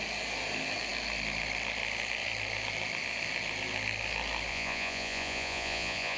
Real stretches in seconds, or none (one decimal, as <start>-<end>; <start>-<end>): 0.0-4.5